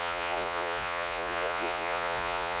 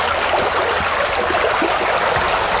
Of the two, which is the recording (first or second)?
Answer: second